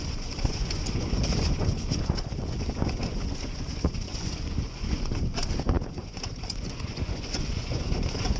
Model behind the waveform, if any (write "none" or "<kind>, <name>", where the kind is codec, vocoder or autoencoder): vocoder, Vocos